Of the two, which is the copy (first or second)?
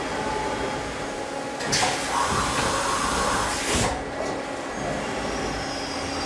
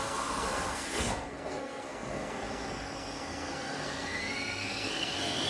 second